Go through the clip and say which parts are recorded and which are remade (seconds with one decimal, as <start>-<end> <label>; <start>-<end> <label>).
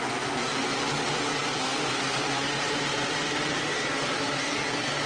0.0-1.7 recorded; 1.7-4.6 remade; 4.6-5.1 recorded